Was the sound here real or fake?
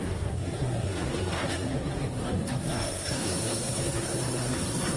fake